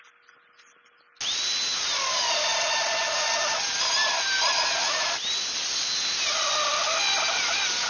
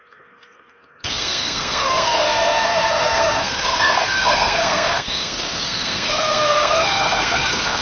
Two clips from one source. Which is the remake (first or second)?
second